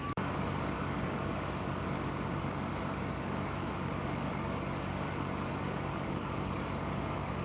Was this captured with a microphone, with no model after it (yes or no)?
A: no